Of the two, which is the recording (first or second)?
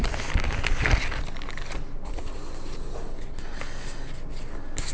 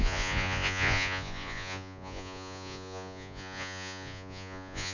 first